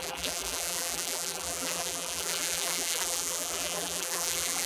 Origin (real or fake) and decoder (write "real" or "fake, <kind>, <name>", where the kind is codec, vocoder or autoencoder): fake, vocoder, BigVGAN v2